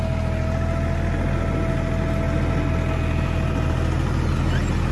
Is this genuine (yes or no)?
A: yes